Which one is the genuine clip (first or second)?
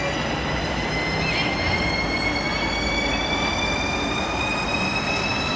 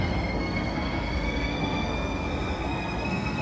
first